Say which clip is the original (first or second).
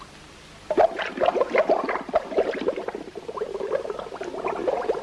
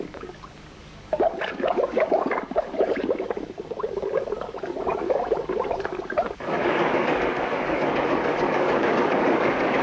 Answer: first